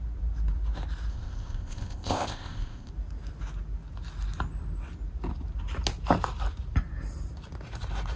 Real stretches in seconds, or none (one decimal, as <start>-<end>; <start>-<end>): 0.0-1.1; 2.9-8.2